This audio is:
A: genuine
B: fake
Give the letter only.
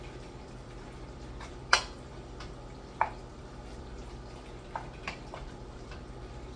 B